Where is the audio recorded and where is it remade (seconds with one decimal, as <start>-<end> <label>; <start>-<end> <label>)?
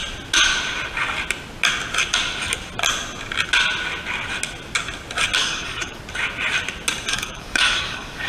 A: 0.0-5.4 recorded; 5.4-6.0 remade; 6.0-7.1 recorded; 7.1-8.3 remade